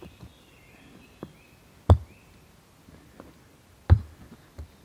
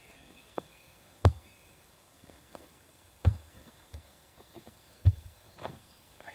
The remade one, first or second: second